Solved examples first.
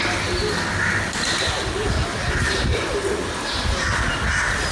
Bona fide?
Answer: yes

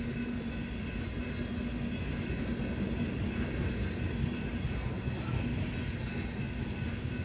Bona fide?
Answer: yes